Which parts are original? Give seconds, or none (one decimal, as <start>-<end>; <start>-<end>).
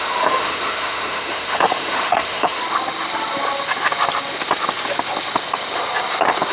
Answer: 2.6-6.5